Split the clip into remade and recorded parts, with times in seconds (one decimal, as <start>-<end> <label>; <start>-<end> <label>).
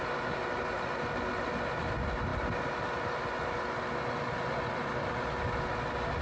0.0-6.2 recorded